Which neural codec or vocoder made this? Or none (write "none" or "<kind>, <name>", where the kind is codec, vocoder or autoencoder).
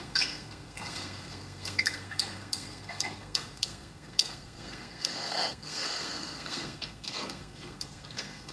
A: codec, SNAC